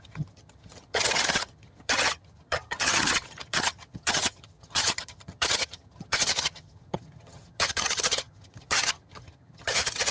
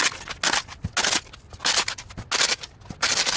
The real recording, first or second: second